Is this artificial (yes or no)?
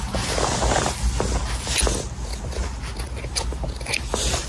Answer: no